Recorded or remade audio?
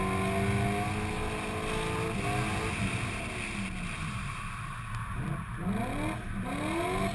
recorded